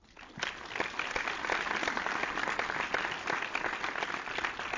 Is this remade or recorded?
recorded